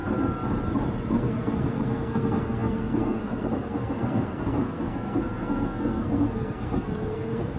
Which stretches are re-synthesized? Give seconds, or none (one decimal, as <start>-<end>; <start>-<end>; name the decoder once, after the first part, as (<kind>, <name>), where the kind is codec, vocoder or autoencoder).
1.1-7.6 (codec, SNAC)